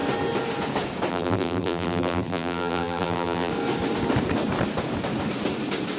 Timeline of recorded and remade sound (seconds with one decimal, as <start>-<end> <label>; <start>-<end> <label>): 0.0-1.1 recorded; 1.1-3.5 remade; 3.5-6.0 recorded